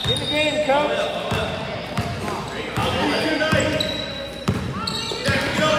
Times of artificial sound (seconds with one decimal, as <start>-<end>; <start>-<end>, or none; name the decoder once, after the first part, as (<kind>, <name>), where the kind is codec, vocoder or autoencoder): none